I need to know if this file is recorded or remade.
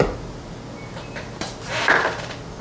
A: recorded